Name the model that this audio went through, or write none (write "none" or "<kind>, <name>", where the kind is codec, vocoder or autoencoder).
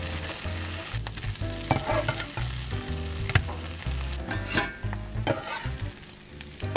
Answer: none